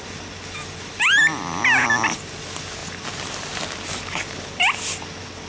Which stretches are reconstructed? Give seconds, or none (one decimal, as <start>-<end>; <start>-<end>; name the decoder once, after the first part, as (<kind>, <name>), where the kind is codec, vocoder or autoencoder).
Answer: none